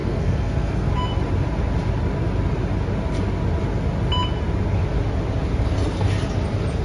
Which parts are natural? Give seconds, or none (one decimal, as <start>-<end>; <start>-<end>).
0.9-6.8